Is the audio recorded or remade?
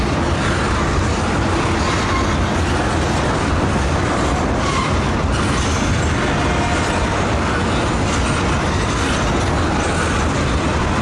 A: recorded